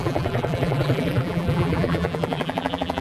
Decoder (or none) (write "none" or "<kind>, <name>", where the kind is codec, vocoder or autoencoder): vocoder, BigVGAN v2